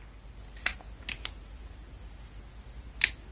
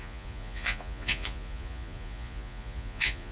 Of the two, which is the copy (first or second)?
second